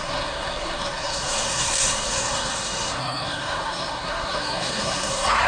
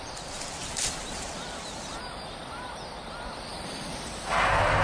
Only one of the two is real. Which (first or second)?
second